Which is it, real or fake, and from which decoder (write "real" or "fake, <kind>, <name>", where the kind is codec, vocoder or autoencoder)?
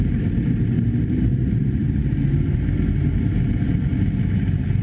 fake, vocoder, BigVGAN v2